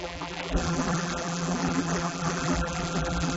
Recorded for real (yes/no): no